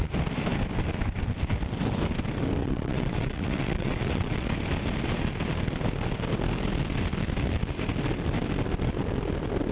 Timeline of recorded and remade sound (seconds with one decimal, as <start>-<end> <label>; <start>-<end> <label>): 0.0-2.6 recorded; 2.6-4.5 remade; 4.5-9.7 recorded